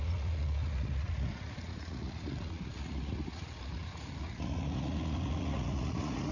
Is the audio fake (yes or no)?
yes